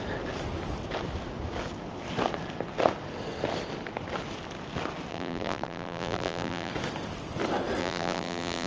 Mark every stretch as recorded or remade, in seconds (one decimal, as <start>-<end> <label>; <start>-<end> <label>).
0.0-5.1 recorded; 5.1-6.7 remade; 6.7-7.8 recorded; 7.8-8.7 remade